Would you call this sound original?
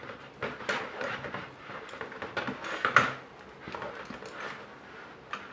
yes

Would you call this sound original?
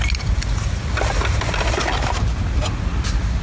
yes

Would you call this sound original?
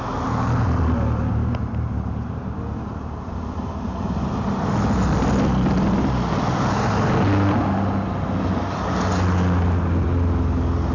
yes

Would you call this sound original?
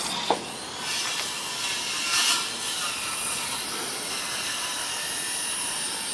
yes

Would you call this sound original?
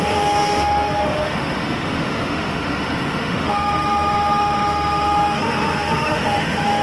no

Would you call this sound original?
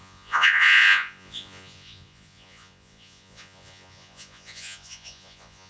no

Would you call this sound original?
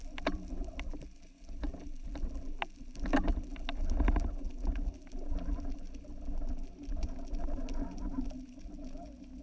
yes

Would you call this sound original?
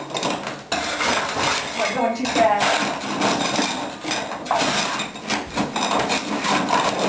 yes